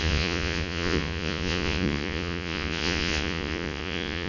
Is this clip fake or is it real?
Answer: fake